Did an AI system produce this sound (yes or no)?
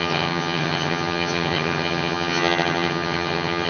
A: yes